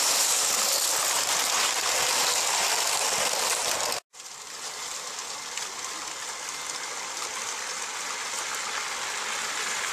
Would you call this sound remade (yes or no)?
no